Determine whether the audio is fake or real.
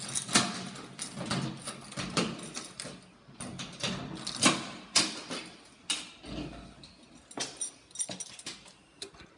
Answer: real